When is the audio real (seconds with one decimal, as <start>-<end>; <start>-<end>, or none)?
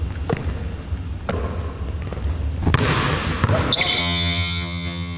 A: 0.0-4.0